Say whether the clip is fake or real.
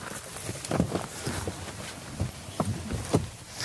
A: real